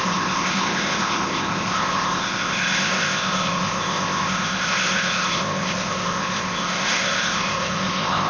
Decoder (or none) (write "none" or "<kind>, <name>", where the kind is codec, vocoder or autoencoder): codec, ZipCodec